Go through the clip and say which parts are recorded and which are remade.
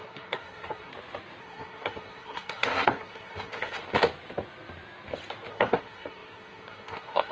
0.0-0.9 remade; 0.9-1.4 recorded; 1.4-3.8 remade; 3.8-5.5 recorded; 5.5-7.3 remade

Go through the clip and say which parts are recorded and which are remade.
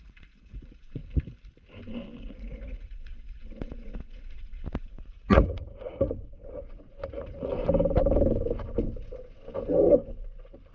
0.0-1.0 remade; 1.0-2.2 recorded; 2.2-7.5 remade; 7.5-10.7 recorded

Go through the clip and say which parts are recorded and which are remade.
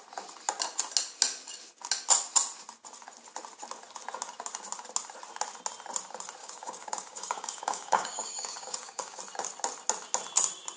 0.0-6.4 recorded; 6.4-9.2 remade; 9.2-10.8 recorded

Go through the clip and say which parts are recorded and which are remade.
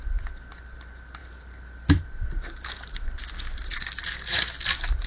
0.0-5.1 recorded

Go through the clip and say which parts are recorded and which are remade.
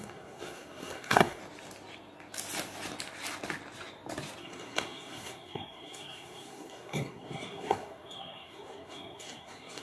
0.0-1.4 remade; 1.4-4.4 recorded; 4.4-9.8 remade